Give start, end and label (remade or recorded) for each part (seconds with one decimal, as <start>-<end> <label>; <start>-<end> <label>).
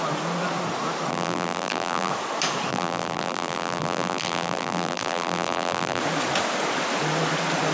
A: 0.0-1.1 recorded; 1.1-2.1 remade; 2.1-2.7 recorded; 2.7-6.0 remade; 6.0-7.7 recorded